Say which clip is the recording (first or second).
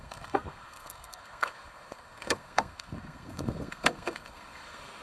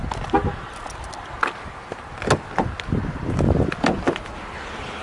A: second